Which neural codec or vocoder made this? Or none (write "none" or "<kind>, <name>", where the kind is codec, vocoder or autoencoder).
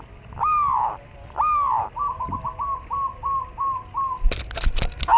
none